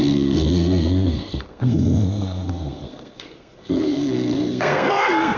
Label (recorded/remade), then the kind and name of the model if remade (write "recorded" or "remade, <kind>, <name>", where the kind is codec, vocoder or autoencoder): remade, codec, SNAC